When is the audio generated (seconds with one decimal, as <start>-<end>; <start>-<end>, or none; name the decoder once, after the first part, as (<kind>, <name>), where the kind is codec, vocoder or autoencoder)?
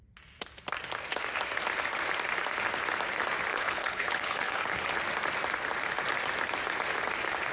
3.5-4.9 (codec, HILCodec)